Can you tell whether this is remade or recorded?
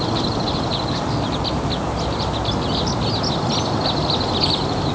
recorded